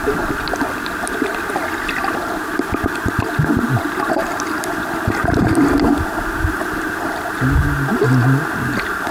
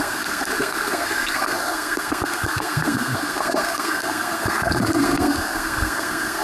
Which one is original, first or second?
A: first